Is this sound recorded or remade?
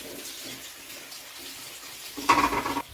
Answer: recorded